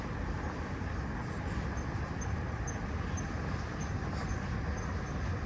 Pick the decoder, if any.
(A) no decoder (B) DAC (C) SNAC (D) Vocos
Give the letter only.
A